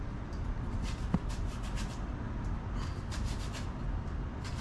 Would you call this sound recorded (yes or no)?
yes